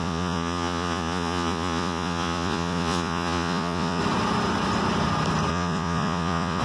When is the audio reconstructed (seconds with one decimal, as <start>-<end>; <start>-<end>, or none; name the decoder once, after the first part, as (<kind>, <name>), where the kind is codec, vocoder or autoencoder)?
0.0-4.0 (vocoder, Vocos); 5.5-6.6